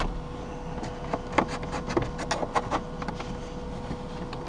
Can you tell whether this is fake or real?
real